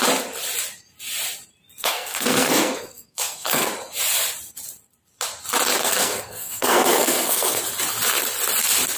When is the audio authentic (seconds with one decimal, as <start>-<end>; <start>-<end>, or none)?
0.0-1.8; 3.7-5.8; 7.6-9.0